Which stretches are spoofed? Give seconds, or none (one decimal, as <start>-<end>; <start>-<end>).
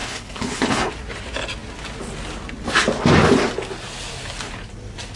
0.0-0.9